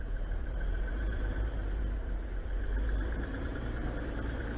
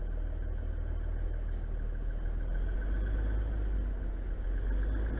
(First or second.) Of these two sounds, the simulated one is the first